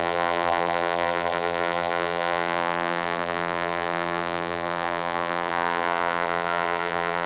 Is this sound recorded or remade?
remade